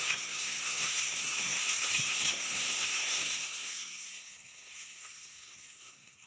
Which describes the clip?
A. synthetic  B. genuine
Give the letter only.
A